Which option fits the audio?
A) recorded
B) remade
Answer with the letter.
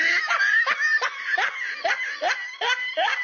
A